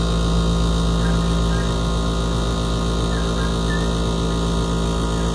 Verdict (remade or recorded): recorded